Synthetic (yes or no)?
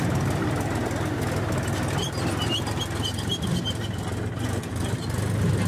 no